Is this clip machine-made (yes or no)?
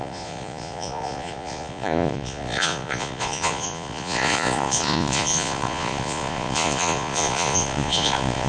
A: yes